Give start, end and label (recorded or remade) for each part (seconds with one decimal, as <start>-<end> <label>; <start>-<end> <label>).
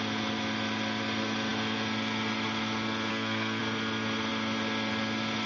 0.0-3.1 recorded; 3.1-3.6 remade; 3.6-5.5 recorded